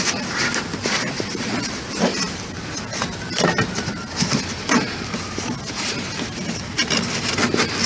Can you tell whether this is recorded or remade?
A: recorded